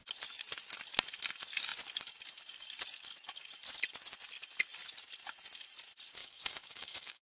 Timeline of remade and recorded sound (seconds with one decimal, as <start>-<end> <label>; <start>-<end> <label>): 0.0-6.2 recorded; 6.2-7.3 remade